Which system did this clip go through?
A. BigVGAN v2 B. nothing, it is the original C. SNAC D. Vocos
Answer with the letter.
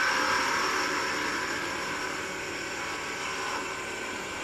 B